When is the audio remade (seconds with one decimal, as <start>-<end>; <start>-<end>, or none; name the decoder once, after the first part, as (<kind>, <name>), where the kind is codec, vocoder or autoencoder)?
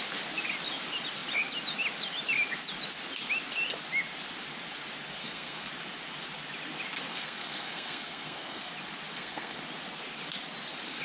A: 5.2-5.7 (codec, SNAC); 7.1-8.7; 9.1-9.6